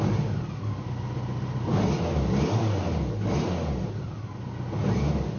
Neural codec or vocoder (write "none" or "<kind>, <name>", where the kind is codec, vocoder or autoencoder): none